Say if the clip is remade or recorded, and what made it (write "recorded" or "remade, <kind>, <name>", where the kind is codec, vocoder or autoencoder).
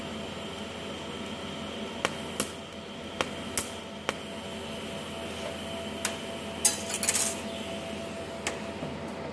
recorded